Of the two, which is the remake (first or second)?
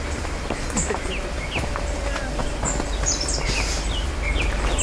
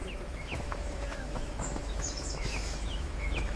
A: second